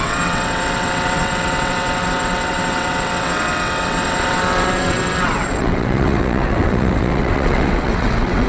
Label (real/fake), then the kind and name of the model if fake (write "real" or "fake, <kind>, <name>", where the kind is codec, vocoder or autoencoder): fake, vocoder, WaveNeXt